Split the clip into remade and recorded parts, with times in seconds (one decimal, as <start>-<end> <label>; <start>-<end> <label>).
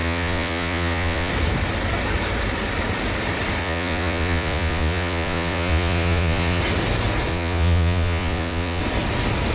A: 0.0-1.3 remade; 1.3-3.6 recorded; 3.6-6.6 remade; 6.6-7.3 recorded; 7.3-8.8 remade; 8.8-9.5 recorded